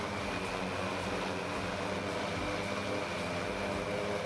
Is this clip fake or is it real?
real